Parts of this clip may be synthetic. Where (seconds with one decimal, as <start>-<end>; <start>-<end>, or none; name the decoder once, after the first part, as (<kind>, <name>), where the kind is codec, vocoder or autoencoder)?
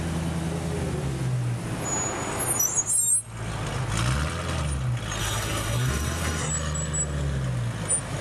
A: 5.2-6.5 (codec, SNAC)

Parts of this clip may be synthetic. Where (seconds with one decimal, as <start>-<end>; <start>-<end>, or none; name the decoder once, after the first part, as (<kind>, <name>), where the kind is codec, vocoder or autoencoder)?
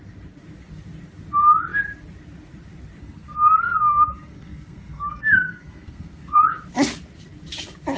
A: 3.0-6.4 (codec, SNAC)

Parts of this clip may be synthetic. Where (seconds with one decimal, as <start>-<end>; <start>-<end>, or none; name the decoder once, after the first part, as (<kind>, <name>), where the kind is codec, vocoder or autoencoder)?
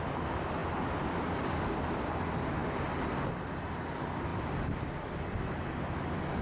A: none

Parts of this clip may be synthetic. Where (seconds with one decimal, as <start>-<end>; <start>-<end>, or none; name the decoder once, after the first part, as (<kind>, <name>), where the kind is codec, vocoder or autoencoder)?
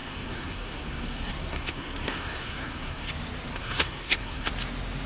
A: 0.0-3.1 (codec, SNAC); 3.5-4.5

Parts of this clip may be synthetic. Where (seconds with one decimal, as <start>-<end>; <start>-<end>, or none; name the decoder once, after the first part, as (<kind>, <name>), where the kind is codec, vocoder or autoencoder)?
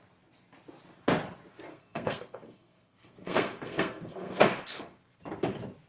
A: 1.7-5.2 (codec, SNAC)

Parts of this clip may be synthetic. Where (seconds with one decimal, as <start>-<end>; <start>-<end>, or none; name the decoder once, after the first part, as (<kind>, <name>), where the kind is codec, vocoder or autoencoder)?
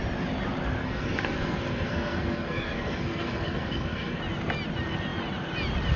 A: 0.8-4.2 (codec, SNAC)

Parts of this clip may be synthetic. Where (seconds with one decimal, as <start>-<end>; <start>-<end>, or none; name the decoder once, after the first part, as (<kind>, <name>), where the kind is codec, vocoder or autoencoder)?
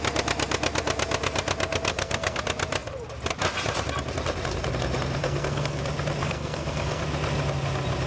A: 1.9-2.4 (codec, SNAC); 5.2-5.8; 6.2-7.0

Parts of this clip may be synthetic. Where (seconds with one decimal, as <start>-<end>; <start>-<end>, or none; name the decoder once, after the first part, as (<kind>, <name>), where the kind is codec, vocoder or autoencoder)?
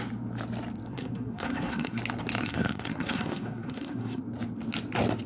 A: 0.9-2.0 (codec, SNAC); 2.4-4.2